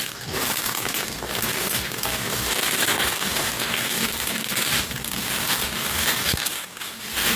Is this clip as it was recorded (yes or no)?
no